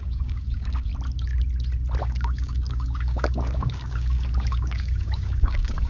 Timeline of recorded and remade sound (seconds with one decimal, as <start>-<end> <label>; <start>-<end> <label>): 0.0-0.9 remade; 0.9-2.0 recorded; 2.0-5.9 remade